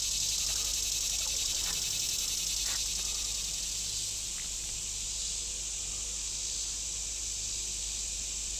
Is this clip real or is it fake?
real